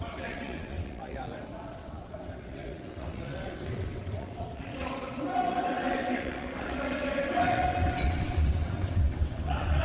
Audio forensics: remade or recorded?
remade